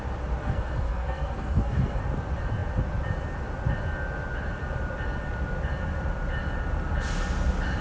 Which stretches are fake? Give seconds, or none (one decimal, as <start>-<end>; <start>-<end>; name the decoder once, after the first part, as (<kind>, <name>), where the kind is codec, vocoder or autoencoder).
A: 0.4-2.0 (codec, SNAC)